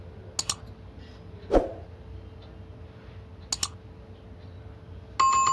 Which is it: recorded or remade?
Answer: recorded